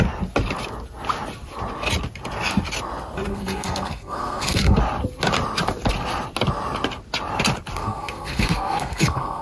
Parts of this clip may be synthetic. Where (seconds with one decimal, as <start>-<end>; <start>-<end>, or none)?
3.3-4.8; 7.8-9.4